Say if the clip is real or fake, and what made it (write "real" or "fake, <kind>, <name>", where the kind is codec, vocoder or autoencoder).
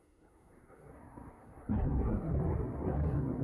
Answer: fake, codec, SNAC